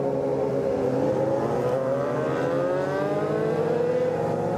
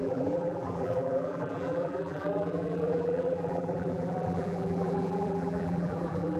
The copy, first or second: second